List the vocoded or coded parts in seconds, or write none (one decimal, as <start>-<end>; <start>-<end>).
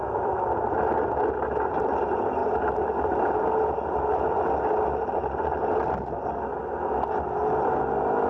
none